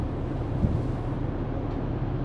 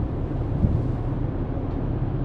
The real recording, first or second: first